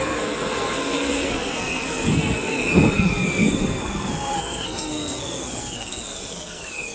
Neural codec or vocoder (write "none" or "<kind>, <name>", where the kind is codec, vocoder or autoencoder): codec, SNAC